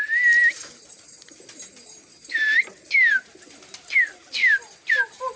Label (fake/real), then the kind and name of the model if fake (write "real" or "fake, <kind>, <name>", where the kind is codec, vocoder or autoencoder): real